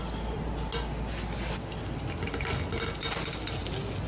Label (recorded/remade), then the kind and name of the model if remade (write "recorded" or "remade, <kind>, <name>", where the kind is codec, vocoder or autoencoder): recorded